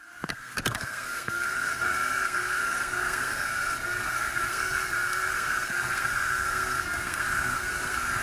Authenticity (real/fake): fake